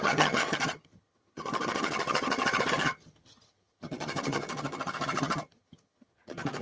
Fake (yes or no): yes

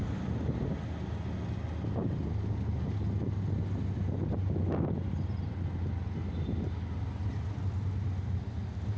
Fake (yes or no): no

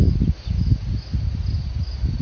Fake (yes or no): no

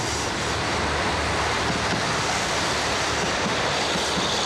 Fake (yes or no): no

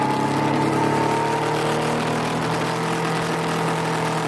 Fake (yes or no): no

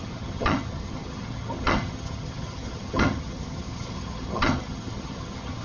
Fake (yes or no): yes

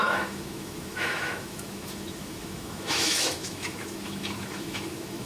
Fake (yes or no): yes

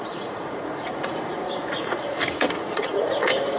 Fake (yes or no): yes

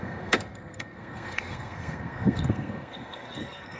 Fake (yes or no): yes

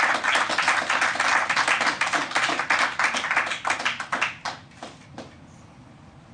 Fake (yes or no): no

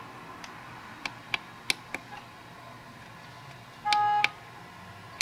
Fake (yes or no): no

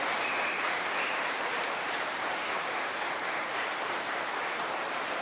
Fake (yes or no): yes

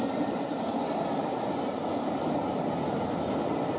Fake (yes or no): no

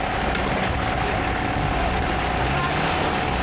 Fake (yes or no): no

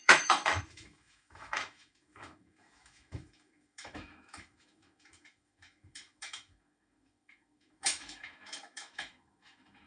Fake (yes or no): yes